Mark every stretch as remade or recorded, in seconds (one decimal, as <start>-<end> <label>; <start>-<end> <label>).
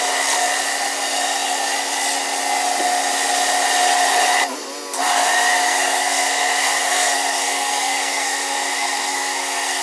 0.0-5.5 recorded; 5.5-9.8 remade